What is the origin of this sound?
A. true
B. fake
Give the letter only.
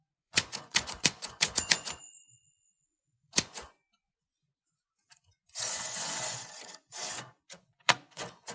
B